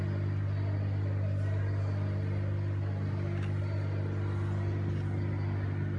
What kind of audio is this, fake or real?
real